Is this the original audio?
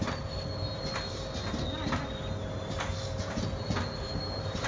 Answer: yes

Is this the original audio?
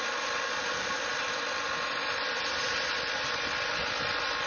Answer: yes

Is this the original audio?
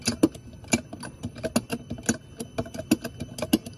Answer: yes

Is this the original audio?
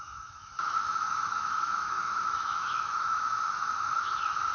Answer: no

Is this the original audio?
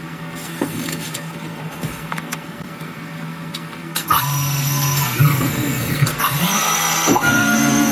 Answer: no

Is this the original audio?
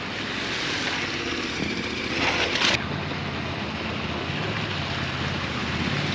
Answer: yes